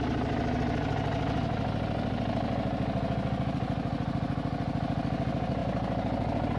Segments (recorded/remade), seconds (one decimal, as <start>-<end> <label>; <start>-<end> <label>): 0.0-6.6 recorded